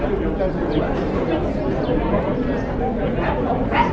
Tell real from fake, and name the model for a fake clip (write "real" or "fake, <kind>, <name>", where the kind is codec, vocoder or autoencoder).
real